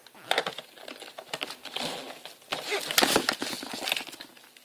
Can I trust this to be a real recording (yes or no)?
yes